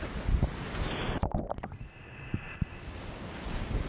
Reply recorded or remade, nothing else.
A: recorded